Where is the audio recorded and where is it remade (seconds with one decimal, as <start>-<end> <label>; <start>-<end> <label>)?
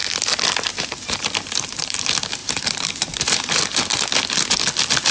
0.0-2.0 remade; 2.0-2.4 recorded; 2.4-3.5 remade; 3.5-5.1 recorded